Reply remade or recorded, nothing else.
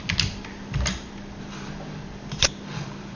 recorded